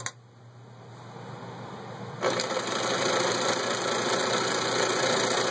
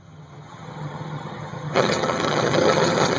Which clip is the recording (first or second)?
first